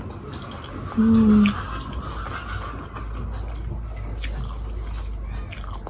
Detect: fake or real real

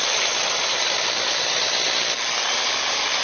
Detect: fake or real real